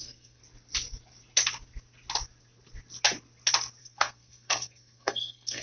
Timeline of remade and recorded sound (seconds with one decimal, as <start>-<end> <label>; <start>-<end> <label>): 0.0-0.4 remade; 0.4-3.8 recorded; 3.8-5.6 remade